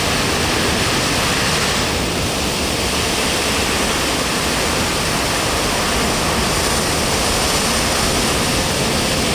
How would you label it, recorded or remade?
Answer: recorded